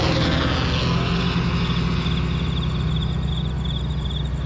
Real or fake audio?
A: real